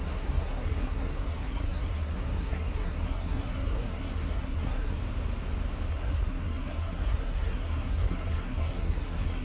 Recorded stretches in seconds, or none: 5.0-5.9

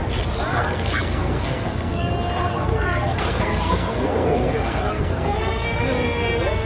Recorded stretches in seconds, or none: 0.0-0.5; 2.1-2.5